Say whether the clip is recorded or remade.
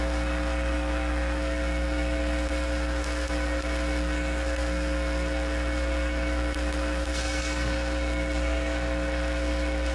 remade